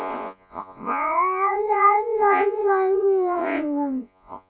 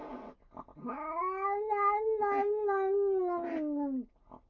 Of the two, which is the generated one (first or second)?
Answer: first